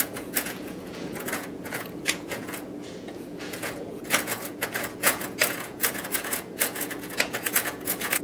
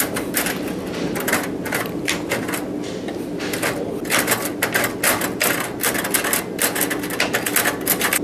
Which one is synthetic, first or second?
first